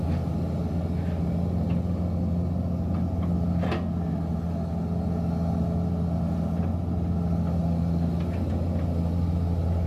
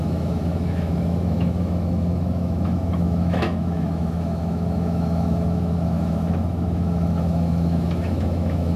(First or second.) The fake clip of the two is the second